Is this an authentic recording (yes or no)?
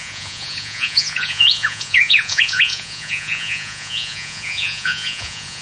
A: no